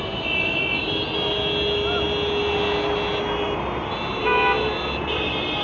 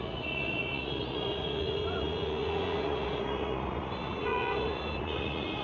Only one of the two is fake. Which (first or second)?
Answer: second